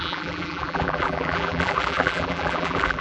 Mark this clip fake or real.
fake